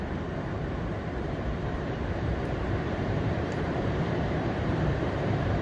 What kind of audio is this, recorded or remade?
remade